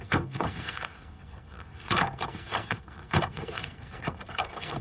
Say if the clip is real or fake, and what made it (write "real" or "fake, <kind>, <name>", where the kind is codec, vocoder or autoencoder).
fake, codec, SNAC